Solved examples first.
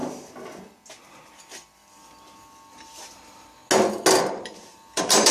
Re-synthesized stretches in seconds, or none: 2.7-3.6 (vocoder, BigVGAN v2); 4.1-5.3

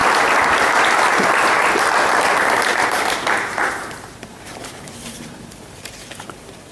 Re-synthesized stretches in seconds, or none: 2.7-6.7 (vocoder, BigVGAN v2)

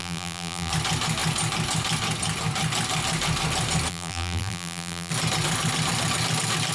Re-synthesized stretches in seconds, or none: 0.0-0.7 (vocoder, BigVGAN v2); 3.9-5.1

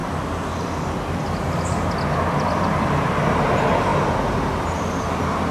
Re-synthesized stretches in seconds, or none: none

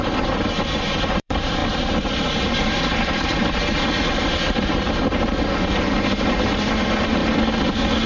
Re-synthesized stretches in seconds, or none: 0.0-1.6 (vocoder, BigVGAN v2); 2.1-7.2

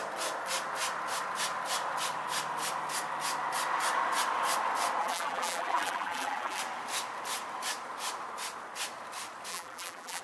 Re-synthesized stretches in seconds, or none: 5.0-6.6 (vocoder, BigVGAN v2); 9.5-10.2

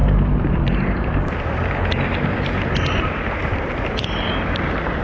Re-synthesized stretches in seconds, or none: 0.0-3.0 (vocoder, BigVGAN v2); 3.4-4.3

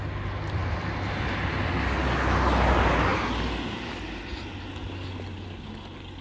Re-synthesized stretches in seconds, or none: none